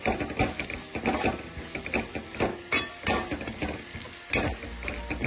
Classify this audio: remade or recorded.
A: recorded